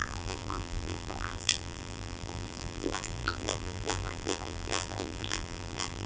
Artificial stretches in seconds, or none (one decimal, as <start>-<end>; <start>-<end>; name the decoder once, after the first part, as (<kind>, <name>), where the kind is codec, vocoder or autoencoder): 0.0-6.1 (vocoder, BigVGAN v2)